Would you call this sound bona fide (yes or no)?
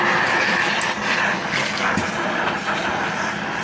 yes